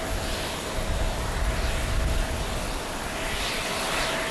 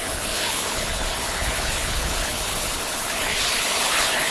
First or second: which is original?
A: first